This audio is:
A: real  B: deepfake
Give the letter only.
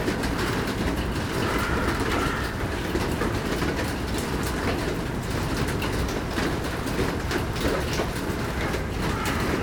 A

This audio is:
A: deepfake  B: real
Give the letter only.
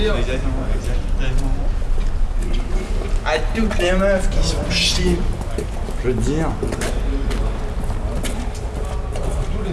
B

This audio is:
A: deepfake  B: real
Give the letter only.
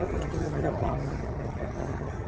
A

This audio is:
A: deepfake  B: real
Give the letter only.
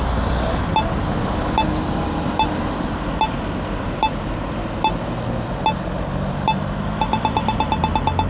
B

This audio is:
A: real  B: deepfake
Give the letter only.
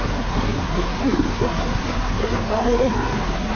B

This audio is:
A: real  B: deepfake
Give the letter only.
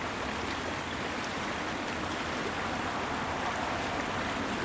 A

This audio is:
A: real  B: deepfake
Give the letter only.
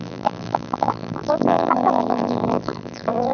B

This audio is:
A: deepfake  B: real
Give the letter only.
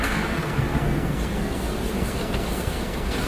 A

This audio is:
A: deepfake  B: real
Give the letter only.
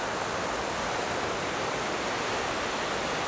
B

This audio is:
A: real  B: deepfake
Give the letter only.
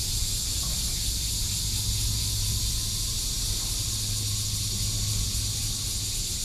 A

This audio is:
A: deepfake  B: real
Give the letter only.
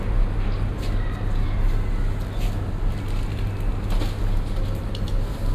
B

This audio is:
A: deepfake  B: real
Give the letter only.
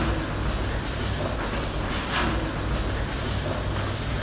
B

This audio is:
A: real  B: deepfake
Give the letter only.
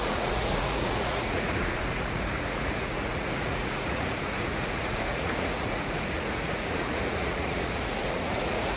B